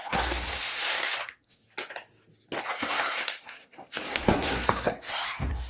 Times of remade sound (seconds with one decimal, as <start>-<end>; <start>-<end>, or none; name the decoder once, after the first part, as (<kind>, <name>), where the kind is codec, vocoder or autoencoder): 0.0-1.6 (codec, SNAC); 2.7-5.7